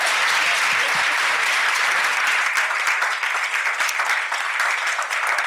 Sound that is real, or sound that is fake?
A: real